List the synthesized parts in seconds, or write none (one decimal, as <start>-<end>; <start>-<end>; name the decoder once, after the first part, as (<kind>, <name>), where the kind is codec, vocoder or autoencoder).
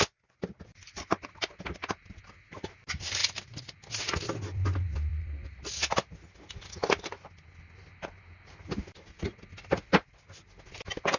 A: none